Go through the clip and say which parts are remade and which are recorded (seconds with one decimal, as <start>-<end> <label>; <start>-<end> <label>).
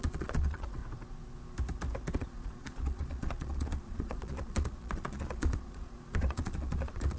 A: 0.0-0.8 remade; 0.8-2.1 recorded; 2.1-7.2 remade